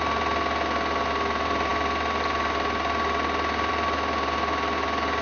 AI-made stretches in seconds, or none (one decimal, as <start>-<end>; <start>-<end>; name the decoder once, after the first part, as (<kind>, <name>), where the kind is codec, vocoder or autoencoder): none